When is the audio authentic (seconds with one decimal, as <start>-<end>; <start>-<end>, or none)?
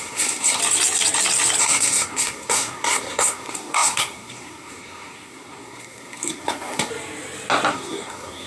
0.6-1.6; 6.9-7.7